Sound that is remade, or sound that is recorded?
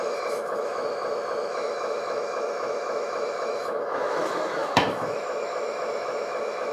remade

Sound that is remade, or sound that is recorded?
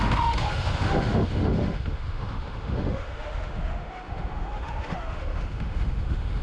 remade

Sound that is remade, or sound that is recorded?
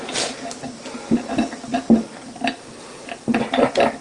recorded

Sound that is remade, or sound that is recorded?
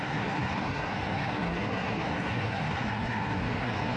remade